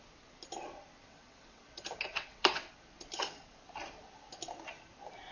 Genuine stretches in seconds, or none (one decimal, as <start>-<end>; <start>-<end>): 0.0-1.0; 1.6-2.1; 2.7-5.3